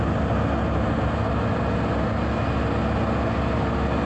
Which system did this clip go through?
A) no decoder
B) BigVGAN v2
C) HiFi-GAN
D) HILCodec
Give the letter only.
A